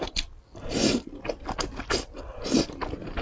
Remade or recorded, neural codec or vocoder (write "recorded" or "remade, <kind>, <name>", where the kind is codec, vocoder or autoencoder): recorded